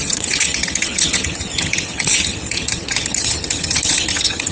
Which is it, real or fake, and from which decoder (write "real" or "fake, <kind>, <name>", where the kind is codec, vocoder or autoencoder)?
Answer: fake, vocoder, HiFi-GAN